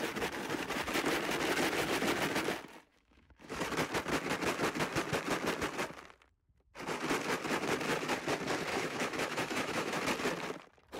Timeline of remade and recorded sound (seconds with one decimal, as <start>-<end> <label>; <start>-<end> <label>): 0.0-2.9 recorded; 2.9-3.6 remade; 3.6-8.7 recorded; 8.7-10.0 remade; 10.0-11.0 recorded